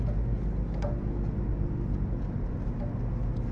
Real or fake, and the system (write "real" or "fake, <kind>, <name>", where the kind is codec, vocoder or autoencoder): real